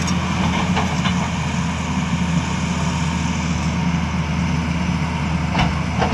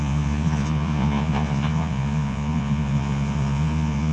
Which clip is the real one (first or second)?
first